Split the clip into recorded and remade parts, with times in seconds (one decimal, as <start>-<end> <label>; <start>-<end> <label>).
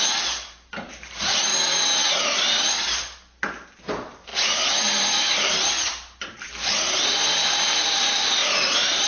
0.0-1.5 remade; 1.5-3.8 recorded; 3.8-4.3 remade; 4.3-4.8 recorded; 4.8-9.1 remade